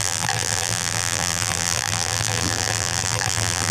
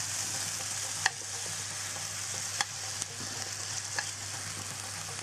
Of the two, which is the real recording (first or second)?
second